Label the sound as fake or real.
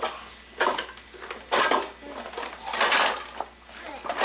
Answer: real